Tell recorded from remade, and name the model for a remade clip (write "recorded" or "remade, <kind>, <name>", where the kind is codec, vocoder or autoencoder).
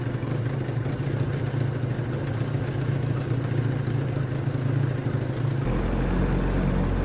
recorded